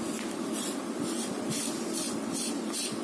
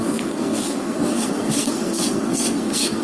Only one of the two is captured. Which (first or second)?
first